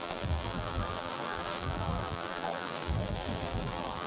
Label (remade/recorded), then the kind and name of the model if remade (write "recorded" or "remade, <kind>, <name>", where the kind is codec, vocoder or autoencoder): remade, vocoder, BigVGAN v2